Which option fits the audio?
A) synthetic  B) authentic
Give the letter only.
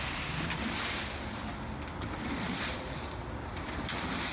B